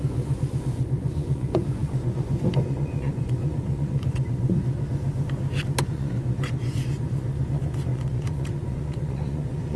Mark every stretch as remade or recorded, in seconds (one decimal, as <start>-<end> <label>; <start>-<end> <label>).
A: 0.0-5.0 remade; 5.0-5.8 recorded; 5.8-9.8 remade